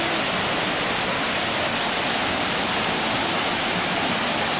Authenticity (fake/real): real